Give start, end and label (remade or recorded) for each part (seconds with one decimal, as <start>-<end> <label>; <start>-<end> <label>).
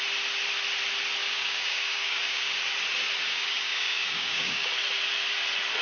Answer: 0.0-1.2 recorded; 1.2-2.5 remade; 2.5-3.3 recorded; 3.3-4.7 remade; 4.7-5.8 recorded